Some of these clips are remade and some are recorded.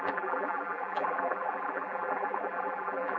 remade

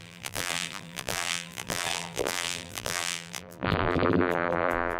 remade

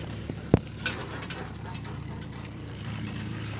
remade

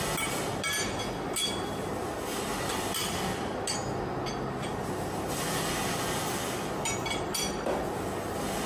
recorded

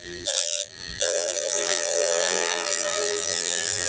remade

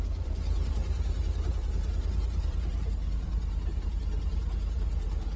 remade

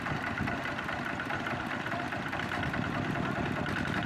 remade